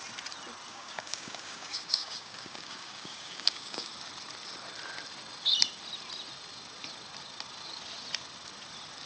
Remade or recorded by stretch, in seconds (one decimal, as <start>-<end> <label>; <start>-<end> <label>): 0.0-0.7 recorded; 0.7-3.9 remade; 3.9-9.1 recorded